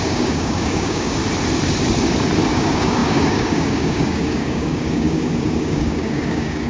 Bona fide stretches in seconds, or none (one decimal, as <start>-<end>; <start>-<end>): 1.2-2.5